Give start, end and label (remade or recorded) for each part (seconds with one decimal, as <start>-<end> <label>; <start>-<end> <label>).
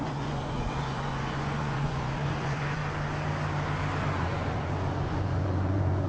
0.0-2.8 remade; 2.8-4.0 recorded; 4.0-6.1 remade